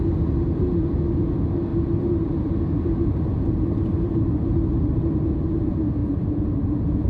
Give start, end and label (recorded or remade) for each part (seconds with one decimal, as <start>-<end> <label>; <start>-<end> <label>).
0.0-6.0 recorded; 6.0-7.1 remade